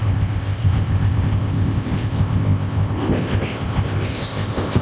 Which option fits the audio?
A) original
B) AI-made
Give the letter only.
B